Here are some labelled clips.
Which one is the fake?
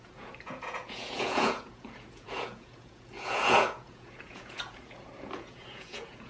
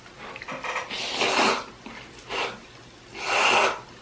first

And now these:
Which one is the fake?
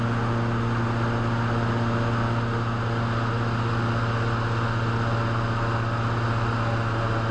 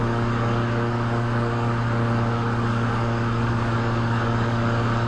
second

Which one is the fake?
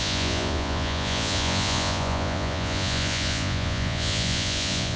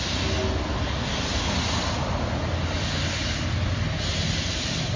first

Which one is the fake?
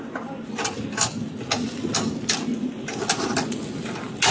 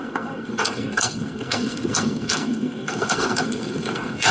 second